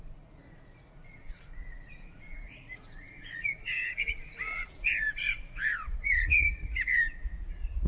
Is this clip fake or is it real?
fake